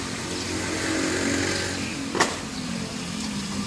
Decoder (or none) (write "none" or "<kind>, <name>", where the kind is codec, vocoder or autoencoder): none